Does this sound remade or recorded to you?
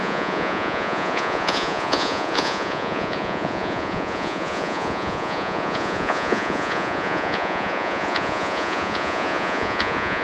remade